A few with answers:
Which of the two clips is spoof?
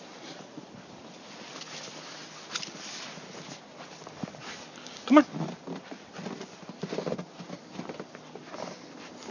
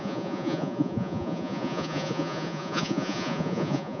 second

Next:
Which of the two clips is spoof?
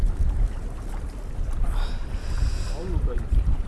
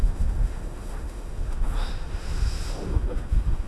second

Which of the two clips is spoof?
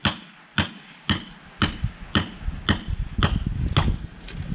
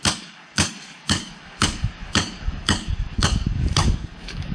second